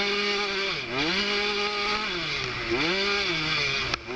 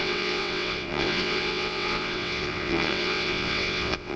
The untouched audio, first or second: first